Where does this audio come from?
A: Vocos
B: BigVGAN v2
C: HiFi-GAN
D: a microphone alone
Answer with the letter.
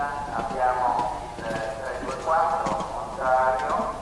D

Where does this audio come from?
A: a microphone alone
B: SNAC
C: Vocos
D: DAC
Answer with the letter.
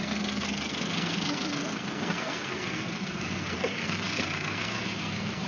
B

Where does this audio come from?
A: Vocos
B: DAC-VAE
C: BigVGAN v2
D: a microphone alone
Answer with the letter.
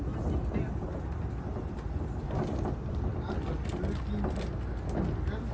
D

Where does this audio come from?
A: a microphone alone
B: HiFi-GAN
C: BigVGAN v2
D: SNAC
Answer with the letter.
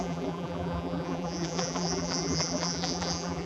C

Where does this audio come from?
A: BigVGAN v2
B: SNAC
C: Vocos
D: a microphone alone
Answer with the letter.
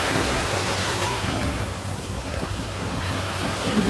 B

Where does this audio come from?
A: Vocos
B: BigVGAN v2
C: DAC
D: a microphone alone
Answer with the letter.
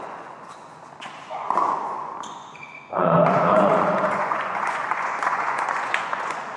A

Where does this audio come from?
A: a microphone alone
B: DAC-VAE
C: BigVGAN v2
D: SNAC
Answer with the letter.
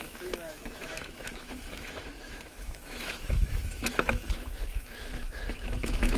B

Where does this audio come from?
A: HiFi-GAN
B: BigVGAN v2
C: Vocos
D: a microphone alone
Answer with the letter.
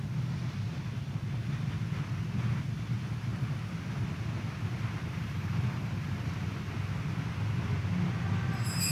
D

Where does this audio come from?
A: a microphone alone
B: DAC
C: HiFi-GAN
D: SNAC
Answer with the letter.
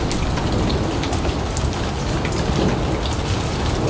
A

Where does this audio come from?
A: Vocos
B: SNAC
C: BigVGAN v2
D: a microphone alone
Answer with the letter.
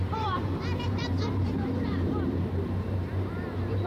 C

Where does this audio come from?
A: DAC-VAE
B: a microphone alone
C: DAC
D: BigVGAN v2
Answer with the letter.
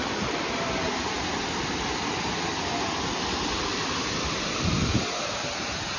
B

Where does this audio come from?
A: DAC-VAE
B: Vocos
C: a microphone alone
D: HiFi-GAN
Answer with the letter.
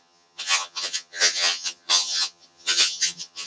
D